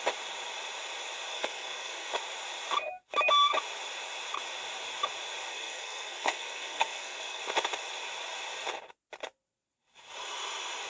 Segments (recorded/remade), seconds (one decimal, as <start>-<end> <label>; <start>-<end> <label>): 0.0-1.3 recorded; 1.3-2.1 remade; 2.1-5.5 recorded; 5.5-7.4 remade; 7.4-10.9 recorded